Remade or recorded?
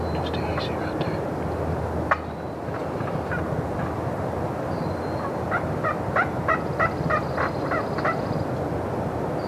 recorded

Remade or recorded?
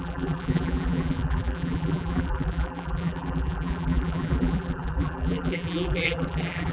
remade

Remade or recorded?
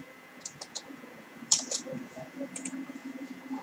remade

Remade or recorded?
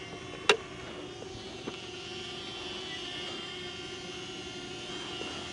recorded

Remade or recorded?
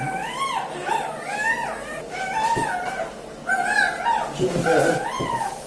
recorded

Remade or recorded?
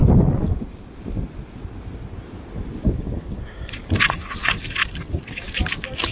recorded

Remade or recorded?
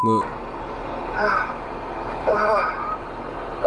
recorded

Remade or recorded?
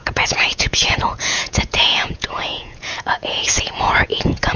remade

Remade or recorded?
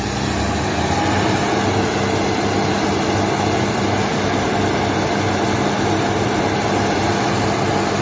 recorded